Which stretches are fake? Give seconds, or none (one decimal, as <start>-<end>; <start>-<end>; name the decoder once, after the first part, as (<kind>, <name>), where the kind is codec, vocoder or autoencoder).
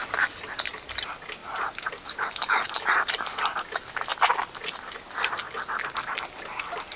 0.0-0.7 (vocoder, BigVGAN v2); 1.4-3.2